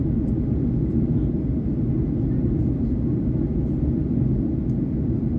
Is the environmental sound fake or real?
real